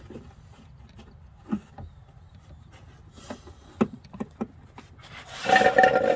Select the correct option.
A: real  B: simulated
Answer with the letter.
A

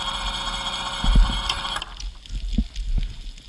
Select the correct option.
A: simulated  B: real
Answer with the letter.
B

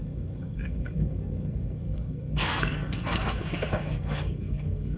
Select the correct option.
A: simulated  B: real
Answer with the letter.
A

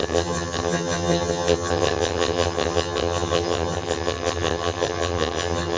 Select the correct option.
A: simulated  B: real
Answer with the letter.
A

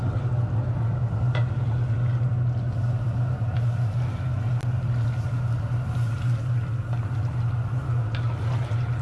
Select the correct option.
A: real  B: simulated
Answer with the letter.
A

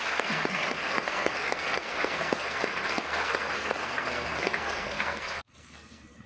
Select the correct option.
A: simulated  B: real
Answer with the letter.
A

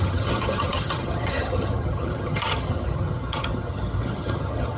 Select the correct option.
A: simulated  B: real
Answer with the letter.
A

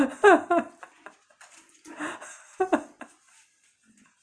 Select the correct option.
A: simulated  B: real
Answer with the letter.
B